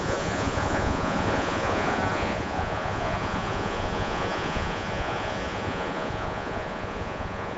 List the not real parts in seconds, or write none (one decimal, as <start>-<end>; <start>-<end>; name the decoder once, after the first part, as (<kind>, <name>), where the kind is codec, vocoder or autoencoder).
0.0-7.6 (vocoder, Vocos)